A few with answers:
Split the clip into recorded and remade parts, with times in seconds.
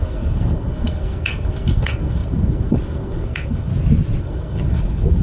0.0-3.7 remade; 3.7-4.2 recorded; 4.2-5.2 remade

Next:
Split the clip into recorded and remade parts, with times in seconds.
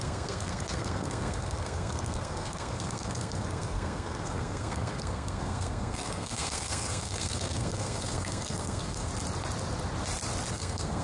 0.0-9.1 remade; 9.1-10.5 recorded; 10.5-11.0 remade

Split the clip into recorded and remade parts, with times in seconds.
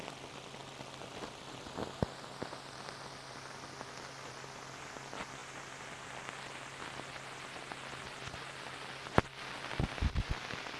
0.0-10.8 recorded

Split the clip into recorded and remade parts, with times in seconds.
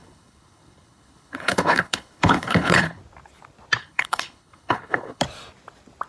0.0-3.0 remade; 3.0-3.8 recorded; 3.8-5.2 remade; 5.2-6.1 recorded